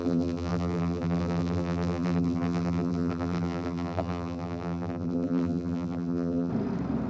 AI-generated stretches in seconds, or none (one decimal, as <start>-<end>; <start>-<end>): 0.0-6.5